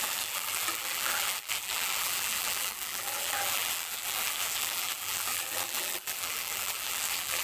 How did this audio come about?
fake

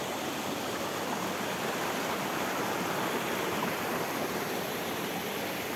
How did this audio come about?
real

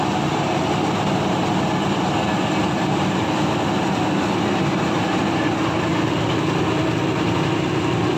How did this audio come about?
real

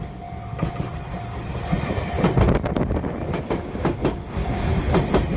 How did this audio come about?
real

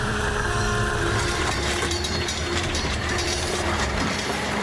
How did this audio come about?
fake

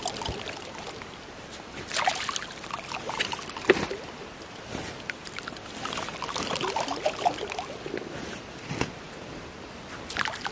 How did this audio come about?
fake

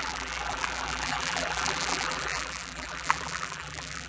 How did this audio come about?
fake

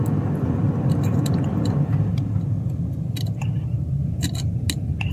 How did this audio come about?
real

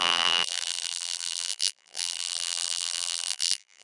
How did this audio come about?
fake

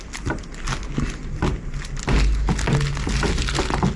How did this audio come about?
real